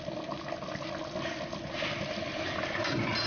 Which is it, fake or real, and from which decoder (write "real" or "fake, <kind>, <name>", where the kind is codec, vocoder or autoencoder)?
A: real